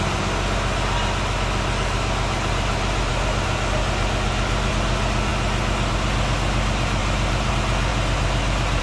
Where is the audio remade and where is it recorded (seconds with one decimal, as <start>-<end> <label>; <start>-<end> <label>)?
0.0-7.0 recorded; 7.0-7.5 remade; 7.5-7.9 recorded; 7.9-8.8 remade